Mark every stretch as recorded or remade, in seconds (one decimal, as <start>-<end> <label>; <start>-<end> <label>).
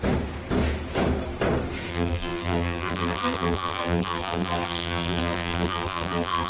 0.0-1.9 recorded; 1.9-6.5 remade